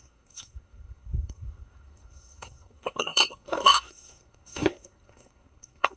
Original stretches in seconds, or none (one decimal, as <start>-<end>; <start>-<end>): none